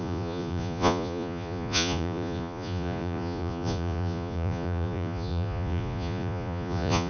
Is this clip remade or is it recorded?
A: remade